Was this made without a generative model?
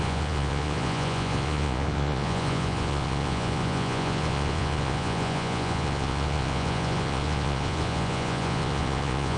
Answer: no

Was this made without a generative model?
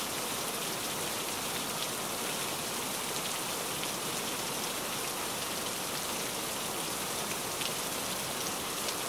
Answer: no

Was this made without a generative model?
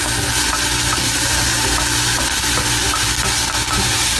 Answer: yes